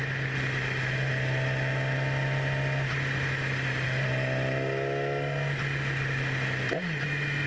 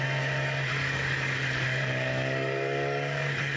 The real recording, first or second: first